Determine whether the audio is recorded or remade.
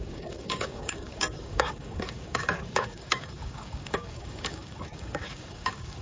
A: remade